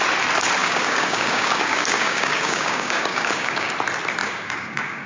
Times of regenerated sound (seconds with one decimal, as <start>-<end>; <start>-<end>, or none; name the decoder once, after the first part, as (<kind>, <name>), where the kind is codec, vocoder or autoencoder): 0.6-3.7 (codec, DAC); 4.2-5.1